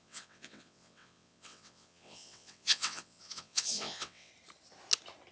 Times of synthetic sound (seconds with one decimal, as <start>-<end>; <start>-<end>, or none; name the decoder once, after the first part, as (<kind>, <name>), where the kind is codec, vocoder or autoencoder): 0.0-4.3 (vocoder, WaveNeXt)